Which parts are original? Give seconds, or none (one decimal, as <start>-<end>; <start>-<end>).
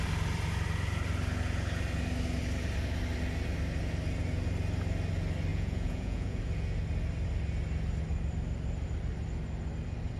0.0-5.5; 6.4-10.2